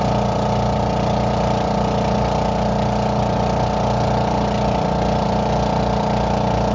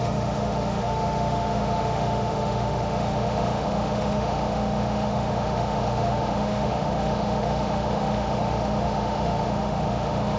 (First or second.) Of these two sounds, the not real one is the second